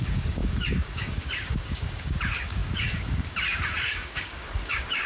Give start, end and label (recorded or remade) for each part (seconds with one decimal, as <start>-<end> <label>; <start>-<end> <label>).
0.0-5.1 remade

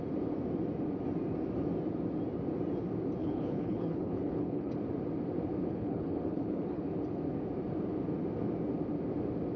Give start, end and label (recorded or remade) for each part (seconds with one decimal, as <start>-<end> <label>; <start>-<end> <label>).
0.0-3.2 recorded; 3.2-4.7 remade; 4.7-5.7 recorded; 5.7-6.8 remade; 6.8-9.6 recorded

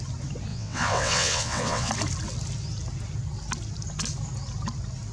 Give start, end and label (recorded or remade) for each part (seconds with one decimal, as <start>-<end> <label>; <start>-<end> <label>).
0.0-0.5 recorded; 0.5-1.9 remade; 1.9-5.1 recorded

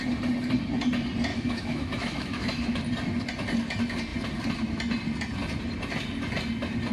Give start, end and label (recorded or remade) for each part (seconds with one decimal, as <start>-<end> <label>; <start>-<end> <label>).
0.0-1.3 recorded; 1.3-2.8 remade; 2.8-6.9 recorded

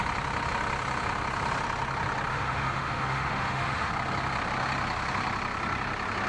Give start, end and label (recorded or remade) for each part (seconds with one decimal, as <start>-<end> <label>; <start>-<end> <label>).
0.0-2.3 recorded; 2.3-3.9 remade; 3.9-6.3 recorded

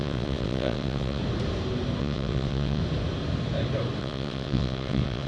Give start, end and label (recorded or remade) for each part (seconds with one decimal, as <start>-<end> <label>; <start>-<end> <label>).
0.0-1.2 remade; 1.2-2.0 recorded; 2.0-2.8 remade; 2.8-4.0 recorded; 4.0-5.3 remade

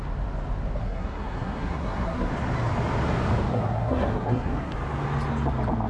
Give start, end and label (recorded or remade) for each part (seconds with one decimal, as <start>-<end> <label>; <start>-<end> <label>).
0.0-0.8 recorded; 0.8-2.3 remade; 2.3-3.5 recorded; 3.5-4.7 remade; 4.7-5.9 recorded

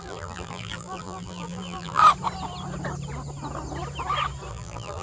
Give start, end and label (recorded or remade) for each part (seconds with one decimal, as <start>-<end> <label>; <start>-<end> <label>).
0.0-2.0 remade; 2.0-4.5 recorded; 4.5-5.0 remade